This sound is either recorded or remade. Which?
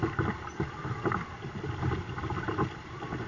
recorded